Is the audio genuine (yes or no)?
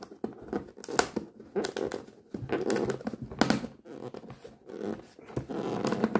yes